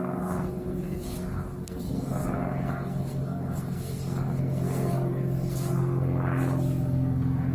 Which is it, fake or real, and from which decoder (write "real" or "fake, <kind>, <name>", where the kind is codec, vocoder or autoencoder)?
fake, codec, SNAC